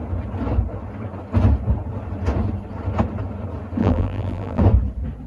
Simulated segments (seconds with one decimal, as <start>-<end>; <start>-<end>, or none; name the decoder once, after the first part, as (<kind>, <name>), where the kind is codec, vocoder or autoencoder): 3.8-4.6 (vocoder, BigVGAN v2)